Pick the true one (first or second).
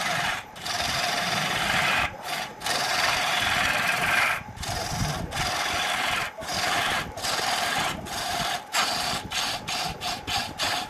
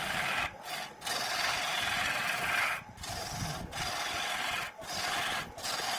second